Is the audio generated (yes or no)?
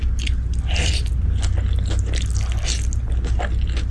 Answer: no